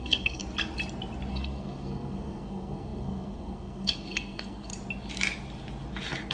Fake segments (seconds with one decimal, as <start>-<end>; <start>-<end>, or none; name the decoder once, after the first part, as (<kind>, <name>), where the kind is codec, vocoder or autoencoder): 0.0-0.4 (codec, SNAC); 1.3-4.7